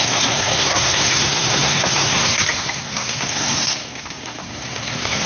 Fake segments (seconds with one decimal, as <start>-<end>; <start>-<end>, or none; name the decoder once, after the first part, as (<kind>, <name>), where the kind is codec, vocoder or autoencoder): 0.0-5.3 (codec, SNAC)